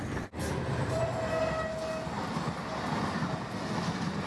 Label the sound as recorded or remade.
recorded